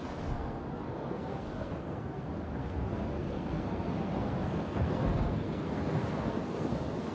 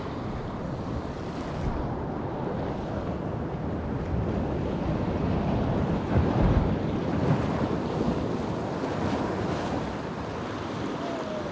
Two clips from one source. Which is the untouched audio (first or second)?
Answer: second